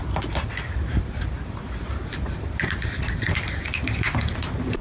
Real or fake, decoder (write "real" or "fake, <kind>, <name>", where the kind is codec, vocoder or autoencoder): real